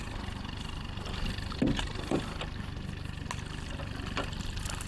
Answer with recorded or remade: recorded